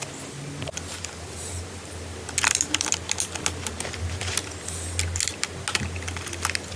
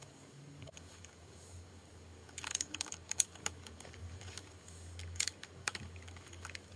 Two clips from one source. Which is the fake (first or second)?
second